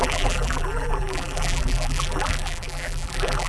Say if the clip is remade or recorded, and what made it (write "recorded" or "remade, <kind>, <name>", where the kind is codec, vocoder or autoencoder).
remade, vocoder, BigVGAN v2